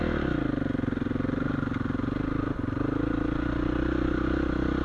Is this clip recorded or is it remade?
recorded